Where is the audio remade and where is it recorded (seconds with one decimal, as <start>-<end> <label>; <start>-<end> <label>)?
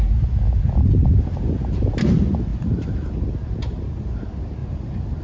0.0-2.5 recorded; 2.5-3.1 remade; 3.1-4.6 recorded; 4.6-5.2 remade